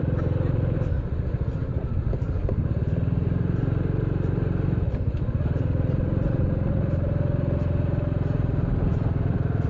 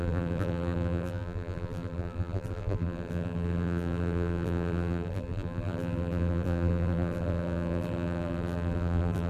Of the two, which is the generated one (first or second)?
second